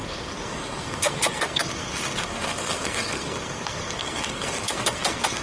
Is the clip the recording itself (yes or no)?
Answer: no